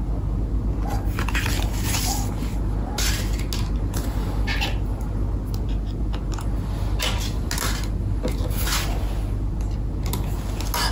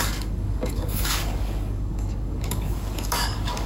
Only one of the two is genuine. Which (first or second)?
first